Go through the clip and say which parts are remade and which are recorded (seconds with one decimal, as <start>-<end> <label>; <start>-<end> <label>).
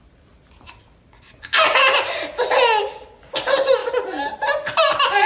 0.0-5.3 recorded